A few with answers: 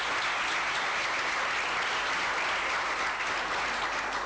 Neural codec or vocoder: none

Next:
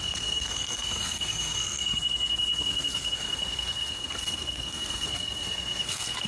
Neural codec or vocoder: codec, SNAC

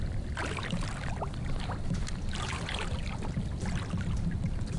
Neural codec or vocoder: none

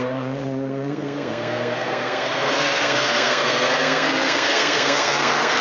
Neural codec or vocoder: codec, SNAC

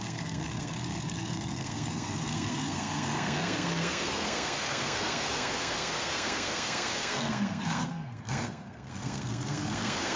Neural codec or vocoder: codec, SNAC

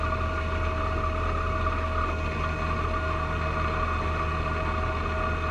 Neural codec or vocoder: none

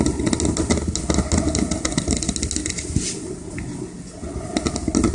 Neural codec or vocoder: none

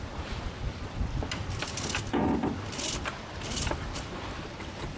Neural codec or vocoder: none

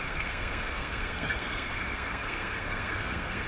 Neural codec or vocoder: codec, SNAC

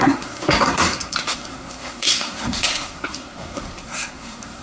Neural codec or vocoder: codec, SNAC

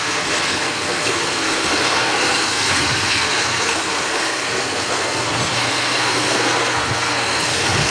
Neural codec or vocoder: codec, SNAC